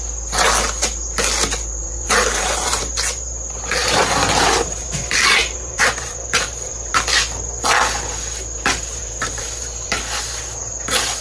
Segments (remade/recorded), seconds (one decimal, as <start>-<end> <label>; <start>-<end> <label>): 0.0-1.8 recorded; 1.8-2.8 remade; 2.8-3.8 recorded; 3.8-6.9 remade; 6.9-9.0 recorded; 9.0-10.0 remade; 10.0-11.2 recorded